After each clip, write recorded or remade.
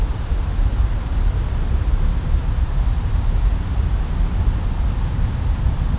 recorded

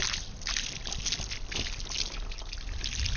recorded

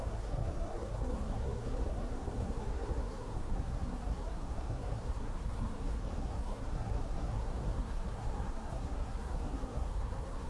remade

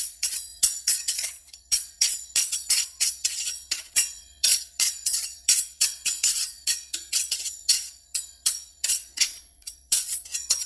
remade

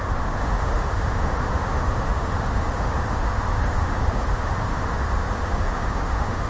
remade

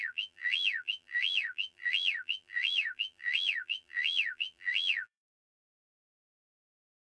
remade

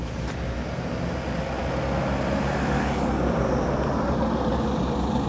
recorded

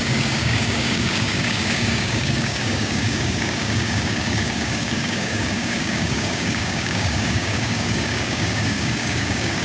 remade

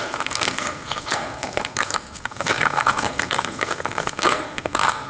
remade